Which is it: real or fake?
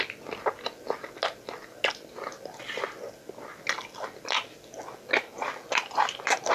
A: real